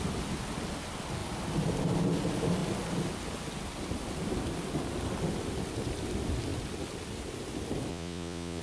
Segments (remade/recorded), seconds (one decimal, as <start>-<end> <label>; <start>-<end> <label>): 0.0-7.9 recorded; 7.9-8.6 remade